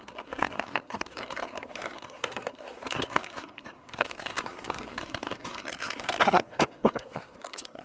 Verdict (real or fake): fake